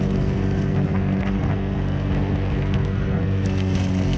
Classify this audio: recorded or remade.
remade